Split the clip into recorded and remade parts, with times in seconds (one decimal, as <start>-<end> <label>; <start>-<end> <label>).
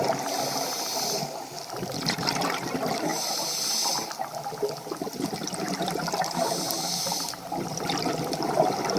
0.0-3.1 recorded; 3.1-6.7 remade; 6.7-9.0 recorded